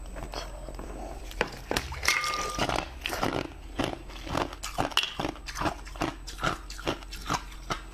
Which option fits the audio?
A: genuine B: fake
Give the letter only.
A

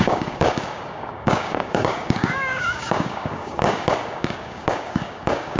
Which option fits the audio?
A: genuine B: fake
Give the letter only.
B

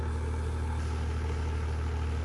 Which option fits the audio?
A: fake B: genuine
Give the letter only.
B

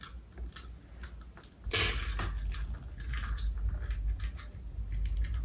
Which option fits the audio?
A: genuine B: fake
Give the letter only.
A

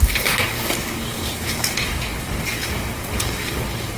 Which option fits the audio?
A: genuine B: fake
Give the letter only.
B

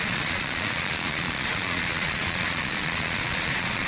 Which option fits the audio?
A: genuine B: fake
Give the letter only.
B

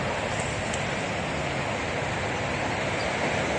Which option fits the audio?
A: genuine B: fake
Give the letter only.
A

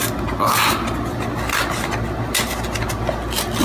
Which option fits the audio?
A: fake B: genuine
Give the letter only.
B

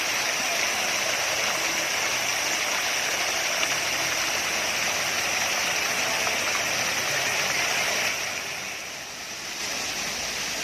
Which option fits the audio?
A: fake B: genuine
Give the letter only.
B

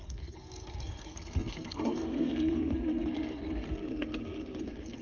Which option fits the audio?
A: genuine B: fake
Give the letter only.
B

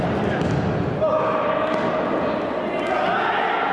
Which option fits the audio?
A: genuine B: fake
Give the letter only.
A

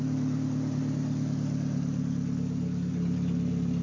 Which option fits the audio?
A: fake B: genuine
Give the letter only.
B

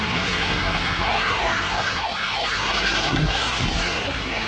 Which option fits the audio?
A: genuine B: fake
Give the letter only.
B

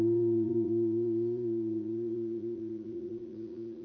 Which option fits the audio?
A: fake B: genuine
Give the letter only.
A